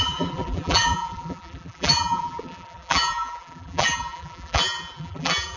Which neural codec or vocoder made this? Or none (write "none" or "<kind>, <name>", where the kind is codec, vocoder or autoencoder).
vocoder, BigVGAN v2